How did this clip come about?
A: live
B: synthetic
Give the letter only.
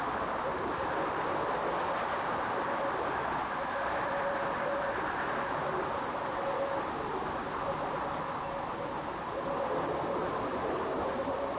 A